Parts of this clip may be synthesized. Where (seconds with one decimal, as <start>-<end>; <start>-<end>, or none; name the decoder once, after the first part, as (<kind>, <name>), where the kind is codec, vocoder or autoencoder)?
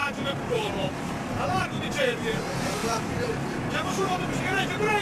0.0-1.1 (vocoder, BigVGAN v2); 2.8-3.7